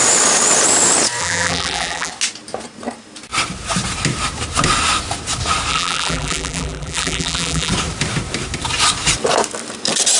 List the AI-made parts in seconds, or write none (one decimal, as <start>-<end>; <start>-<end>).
1.2-2.1; 5.7-7.7